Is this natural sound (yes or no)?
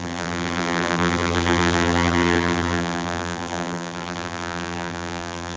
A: no